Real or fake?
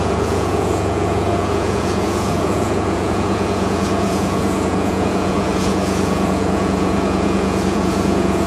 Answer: fake